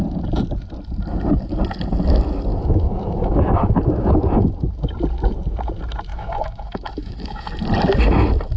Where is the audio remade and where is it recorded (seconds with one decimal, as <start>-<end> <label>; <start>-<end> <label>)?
0.0-2.5 recorded; 2.5-4.2 remade; 4.2-6.1 recorded; 6.1-7.5 remade; 7.5-8.6 recorded